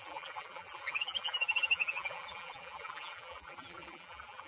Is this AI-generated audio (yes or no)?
yes